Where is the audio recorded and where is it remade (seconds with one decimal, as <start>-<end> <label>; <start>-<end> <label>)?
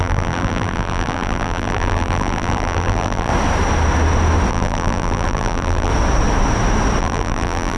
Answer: 0.0-3.3 remade; 3.3-4.5 recorded; 4.5-5.9 remade; 5.9-7.0 recorded; 7.0-7.8 remade